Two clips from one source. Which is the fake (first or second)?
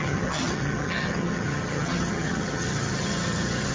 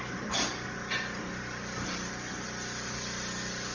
first